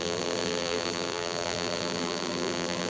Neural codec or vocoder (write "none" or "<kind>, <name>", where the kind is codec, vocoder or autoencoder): vocoder, BigVGAN v2